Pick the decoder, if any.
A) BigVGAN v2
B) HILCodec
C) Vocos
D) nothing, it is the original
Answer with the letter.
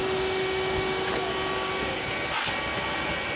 A